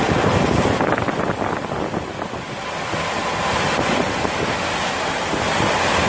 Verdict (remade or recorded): recorded